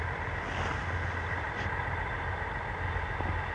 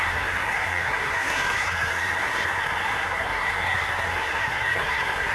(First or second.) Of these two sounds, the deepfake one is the second